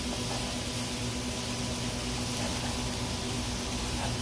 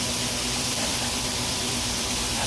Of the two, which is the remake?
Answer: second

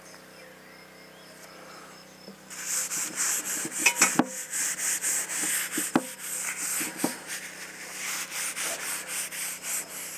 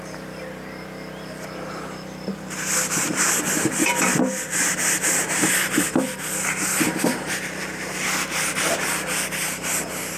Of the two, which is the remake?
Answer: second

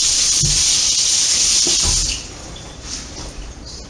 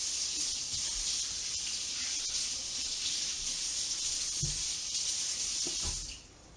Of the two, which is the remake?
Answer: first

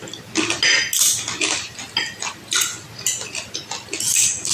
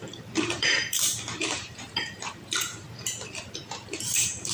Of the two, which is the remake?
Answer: second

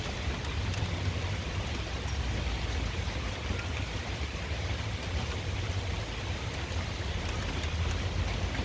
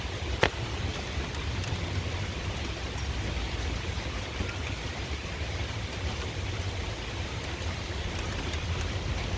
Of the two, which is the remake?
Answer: second